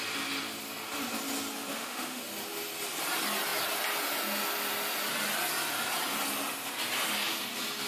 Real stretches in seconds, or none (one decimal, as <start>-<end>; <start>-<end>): 0.0-1.7; 2.2-7.9